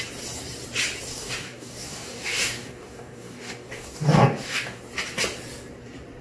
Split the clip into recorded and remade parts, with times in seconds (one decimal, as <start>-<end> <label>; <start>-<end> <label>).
0.0-1.1 recorded; 1.1-4.8 remade; 4.8-6.2 recorded